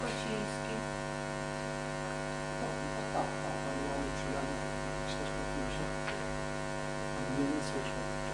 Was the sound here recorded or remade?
recorded